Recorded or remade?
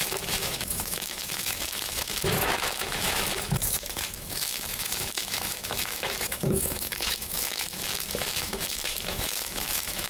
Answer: remade